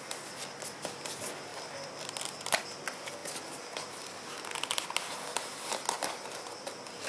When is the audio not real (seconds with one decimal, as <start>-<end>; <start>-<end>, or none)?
none